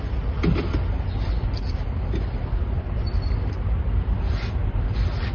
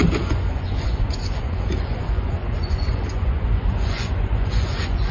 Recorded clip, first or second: first